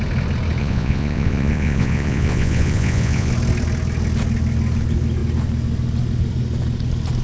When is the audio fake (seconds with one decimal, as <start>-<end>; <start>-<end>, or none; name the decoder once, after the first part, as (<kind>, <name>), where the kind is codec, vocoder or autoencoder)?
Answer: 0.6-3.3 (vocoder, Vocos)